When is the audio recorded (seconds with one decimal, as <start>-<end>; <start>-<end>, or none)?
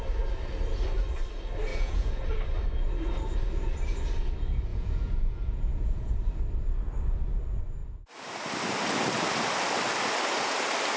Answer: 0.0-1.7; 2.2-4.7; 6.1-11.0